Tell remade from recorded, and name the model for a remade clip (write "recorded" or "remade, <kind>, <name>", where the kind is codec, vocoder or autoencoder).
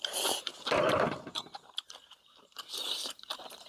remade, vocoder, BigVGAN v2